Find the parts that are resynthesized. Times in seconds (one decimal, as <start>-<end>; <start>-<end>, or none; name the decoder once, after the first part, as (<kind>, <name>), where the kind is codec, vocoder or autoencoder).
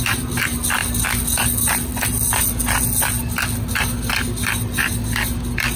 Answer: none